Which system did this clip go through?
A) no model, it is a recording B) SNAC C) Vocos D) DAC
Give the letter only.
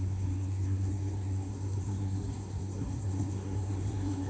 B